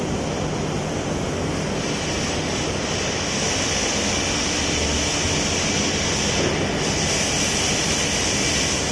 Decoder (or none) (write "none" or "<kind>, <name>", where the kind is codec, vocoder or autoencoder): none